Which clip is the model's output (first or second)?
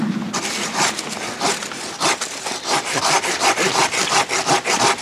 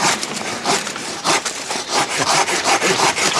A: second